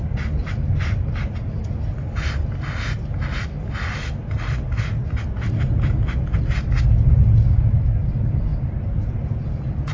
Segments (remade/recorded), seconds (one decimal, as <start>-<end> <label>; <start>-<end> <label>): 0.0-9.9 recorded